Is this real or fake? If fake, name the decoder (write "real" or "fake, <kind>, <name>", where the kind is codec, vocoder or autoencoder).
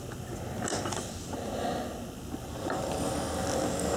real